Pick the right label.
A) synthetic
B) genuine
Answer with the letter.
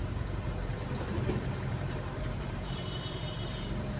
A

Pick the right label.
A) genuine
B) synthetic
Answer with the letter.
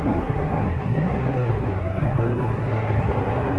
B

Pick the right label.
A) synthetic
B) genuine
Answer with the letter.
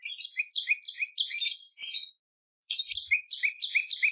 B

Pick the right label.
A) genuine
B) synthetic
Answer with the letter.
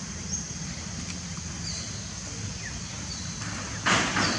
A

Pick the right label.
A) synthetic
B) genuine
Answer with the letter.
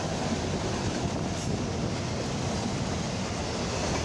B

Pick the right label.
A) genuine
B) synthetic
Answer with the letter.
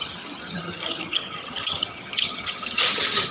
B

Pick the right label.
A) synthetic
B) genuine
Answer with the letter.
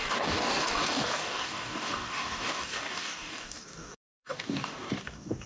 A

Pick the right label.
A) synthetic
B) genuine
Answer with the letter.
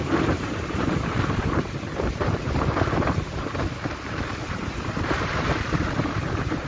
A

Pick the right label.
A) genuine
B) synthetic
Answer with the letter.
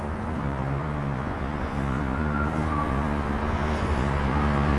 B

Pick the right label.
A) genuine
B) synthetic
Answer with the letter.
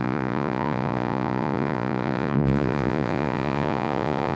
B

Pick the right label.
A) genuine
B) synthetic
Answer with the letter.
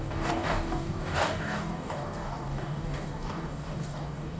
B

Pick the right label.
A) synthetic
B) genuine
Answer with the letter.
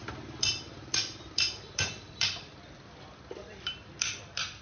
A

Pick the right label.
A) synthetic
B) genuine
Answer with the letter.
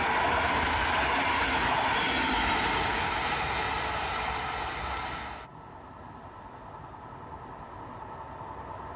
B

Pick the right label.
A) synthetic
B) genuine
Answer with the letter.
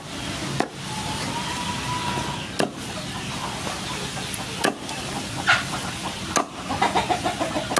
B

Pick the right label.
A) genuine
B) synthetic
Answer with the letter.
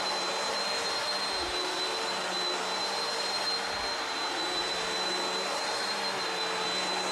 A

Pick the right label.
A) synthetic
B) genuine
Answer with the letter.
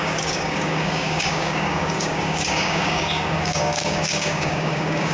A